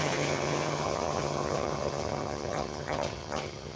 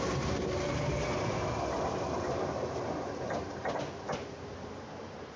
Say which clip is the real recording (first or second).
second